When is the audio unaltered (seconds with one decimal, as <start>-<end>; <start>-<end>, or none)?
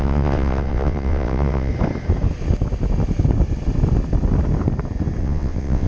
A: 1.7-5.2